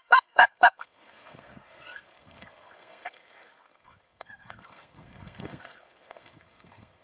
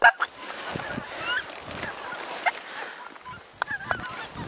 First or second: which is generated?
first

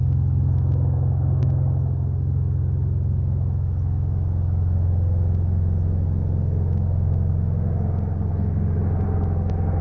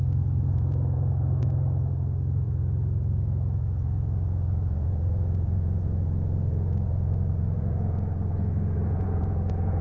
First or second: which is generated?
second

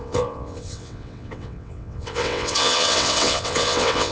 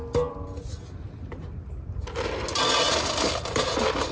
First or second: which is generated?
first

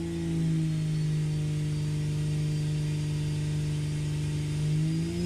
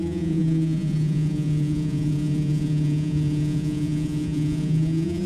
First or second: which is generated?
second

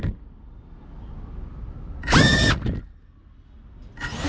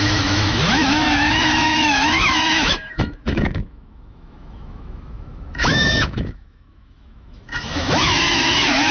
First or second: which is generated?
second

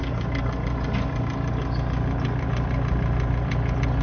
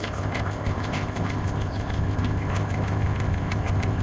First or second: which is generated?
second